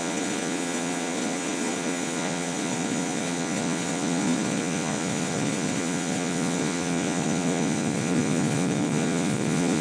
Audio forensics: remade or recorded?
remade